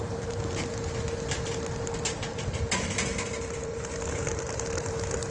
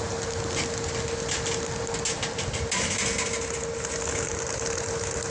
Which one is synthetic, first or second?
first